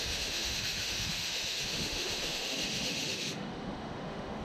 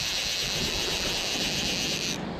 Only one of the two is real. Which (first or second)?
second